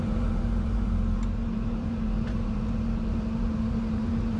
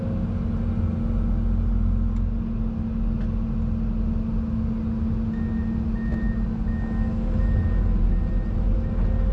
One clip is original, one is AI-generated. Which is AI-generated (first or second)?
first